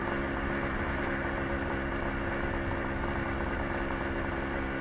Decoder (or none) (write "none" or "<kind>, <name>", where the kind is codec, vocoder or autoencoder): none